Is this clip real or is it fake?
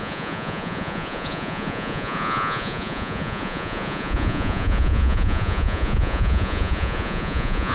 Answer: fake